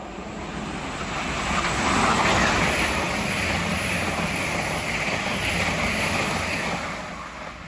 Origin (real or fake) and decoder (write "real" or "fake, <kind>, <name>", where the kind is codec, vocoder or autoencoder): real